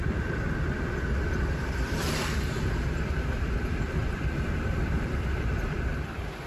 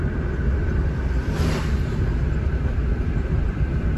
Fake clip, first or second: first